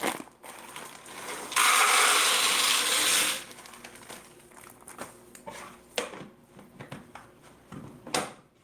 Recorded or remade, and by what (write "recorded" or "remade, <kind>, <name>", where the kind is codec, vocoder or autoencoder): recorded